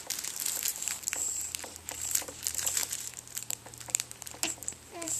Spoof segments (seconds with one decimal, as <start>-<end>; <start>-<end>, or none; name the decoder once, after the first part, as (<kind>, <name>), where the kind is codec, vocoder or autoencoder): 0.0-5.2 (vocoder, BigVGAN v2)